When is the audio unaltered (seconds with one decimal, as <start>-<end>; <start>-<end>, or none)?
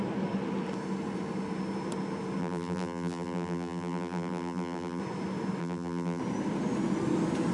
0.0-2.4; 5.0-5.6; 6.2-7.5